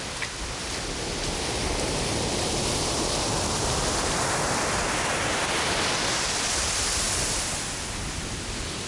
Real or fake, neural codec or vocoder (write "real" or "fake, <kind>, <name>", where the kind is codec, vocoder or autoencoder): real